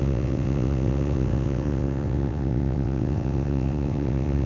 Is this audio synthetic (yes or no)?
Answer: yes